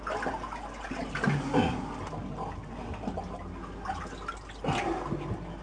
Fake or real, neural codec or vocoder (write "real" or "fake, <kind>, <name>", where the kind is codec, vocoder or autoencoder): real